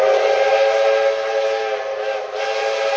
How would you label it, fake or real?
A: real